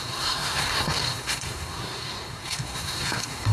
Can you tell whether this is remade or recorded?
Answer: remade